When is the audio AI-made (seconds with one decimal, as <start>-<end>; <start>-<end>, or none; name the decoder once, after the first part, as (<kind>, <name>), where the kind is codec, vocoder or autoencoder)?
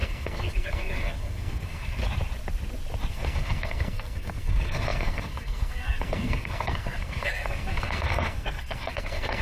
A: 0.0-2.0 (codec, SNAC); 3.1-9.4